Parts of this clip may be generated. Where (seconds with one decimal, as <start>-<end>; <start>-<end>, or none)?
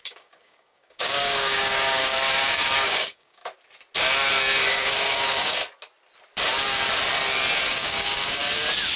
0.0-3.4; 4.7-5.6; 7.7-8.4